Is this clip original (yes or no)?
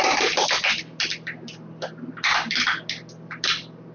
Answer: yes